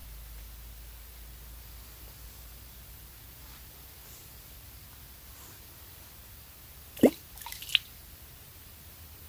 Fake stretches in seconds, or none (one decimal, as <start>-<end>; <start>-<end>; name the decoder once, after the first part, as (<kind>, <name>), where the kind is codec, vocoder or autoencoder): none